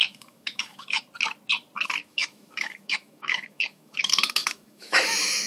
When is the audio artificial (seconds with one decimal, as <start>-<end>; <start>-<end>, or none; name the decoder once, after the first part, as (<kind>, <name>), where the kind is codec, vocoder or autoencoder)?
0.0-1.0 (autoencoder, DAC-VAE); 2.0-5.5